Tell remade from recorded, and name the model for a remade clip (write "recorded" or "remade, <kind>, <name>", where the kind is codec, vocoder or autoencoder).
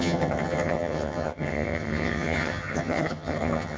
remade, vocoder, HiFi-GAN